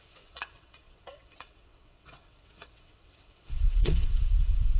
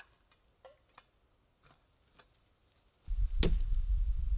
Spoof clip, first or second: first